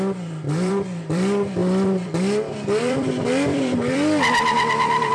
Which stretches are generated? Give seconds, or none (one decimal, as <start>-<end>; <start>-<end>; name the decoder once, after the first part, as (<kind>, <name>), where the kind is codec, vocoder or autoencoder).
0.0-5.1 (vocoder, BigVGAN v2)